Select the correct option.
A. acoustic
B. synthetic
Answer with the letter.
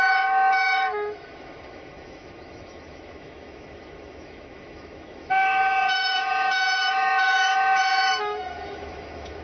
B